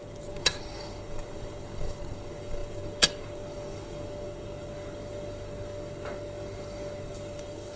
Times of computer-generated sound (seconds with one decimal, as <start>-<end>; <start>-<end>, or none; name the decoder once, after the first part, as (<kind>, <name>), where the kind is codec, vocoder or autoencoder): 0.0-7.8 (codec, DAC)